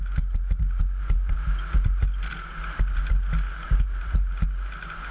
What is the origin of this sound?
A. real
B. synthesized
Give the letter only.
A